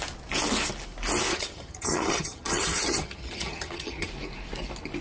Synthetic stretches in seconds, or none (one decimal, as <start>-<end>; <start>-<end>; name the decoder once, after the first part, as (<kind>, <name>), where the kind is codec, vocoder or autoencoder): 1.3-4.1 (vocoder, HiFi-GAN)